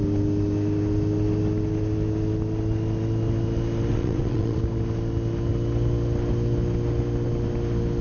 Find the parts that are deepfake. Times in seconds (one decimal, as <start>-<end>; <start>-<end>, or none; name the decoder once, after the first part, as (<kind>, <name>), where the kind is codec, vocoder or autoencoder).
3.9-4.6 (vocoder, WaveNeXt)